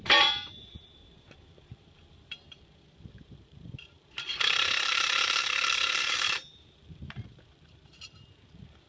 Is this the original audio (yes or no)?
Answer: no